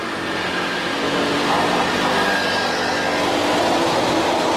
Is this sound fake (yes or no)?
no